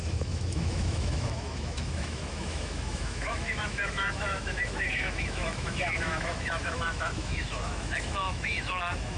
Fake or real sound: fake